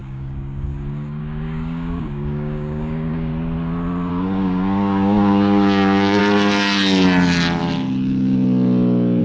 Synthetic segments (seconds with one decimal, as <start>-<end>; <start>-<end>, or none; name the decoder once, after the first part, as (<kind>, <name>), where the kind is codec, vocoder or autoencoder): 0.0-3.3 (codec, DAC); 4.1-6.2